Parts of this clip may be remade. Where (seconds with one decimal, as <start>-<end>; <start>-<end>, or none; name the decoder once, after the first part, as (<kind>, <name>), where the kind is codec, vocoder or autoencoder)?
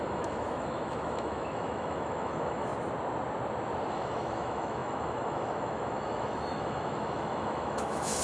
0.0-2.7 (autoencoder, DAC-VAE); 3.9-8.2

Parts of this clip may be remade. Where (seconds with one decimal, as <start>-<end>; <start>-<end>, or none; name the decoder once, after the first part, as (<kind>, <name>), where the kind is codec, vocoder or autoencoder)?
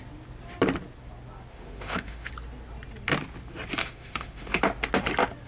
1.5-2.3 (autoencoder, DAC-VAE); 3.8-4.6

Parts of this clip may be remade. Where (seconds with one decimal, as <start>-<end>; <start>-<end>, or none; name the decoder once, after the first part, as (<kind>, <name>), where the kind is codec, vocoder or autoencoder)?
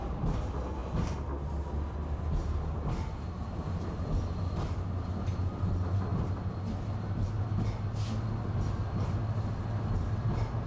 none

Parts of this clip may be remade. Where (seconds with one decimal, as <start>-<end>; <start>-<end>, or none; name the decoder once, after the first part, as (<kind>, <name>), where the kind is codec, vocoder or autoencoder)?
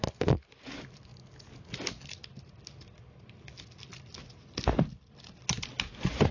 none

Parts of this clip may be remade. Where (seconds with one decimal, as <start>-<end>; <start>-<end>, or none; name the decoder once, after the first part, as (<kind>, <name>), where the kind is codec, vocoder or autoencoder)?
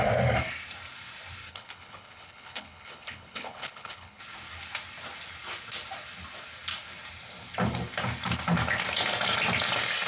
1.5-4.2 (codec, HILCodec)